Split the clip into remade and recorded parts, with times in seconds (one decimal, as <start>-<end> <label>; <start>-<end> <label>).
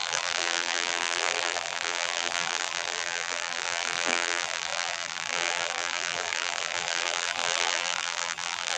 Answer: 0.0-8.8 remade